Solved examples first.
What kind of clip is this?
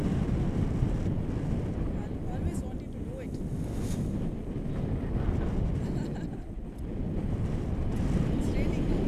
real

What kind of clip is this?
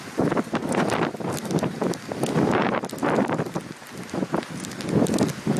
real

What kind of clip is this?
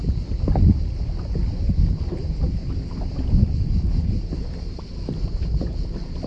real